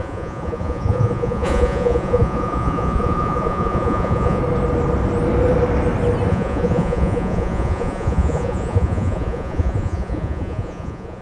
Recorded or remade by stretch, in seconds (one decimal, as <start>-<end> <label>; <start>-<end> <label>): 0.0-4.4 remade; 4.4-6.3 recorded; 6.3-11.2 remade